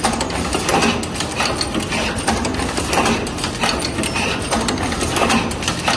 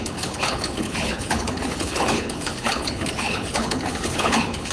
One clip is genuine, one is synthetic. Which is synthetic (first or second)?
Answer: second